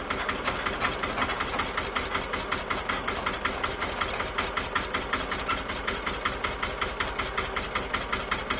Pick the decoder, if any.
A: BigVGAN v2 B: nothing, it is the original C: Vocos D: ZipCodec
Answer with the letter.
B